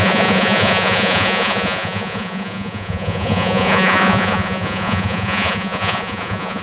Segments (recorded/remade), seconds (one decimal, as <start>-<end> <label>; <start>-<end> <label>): 0.0-6.6 remade

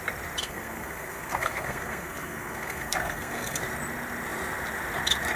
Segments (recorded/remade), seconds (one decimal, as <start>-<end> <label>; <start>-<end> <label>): 0.0-0.4 recorded; 0.4-3.6 remade; 3.6-5.4 recorded

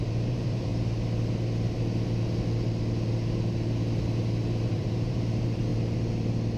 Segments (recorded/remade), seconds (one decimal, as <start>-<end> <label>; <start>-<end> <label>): 0.0-0.7 remade; 0.7-4.7 recorded; 4.7-5.7 remade; 5.7-6.6 recorded

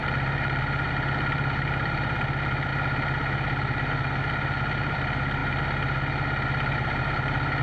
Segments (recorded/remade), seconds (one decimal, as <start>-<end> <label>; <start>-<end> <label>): 0.0-7.6 remade

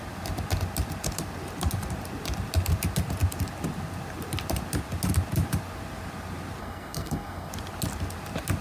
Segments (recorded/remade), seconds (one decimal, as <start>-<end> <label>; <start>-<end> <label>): 0.0-6.6 recorded; 6.6-7.5 remade; 7.5-8.6 recorded